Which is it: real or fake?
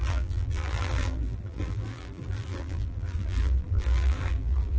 fake